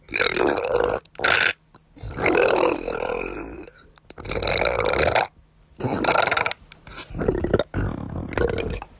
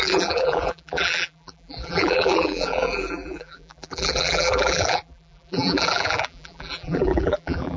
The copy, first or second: second